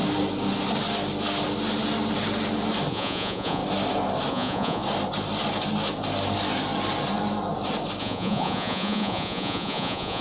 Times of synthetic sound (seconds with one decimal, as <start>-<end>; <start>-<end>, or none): 2.9-3.6; 4.3-4.8; 8.0-10.2